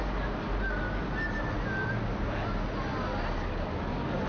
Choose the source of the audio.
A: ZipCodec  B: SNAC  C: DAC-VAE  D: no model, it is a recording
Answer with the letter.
D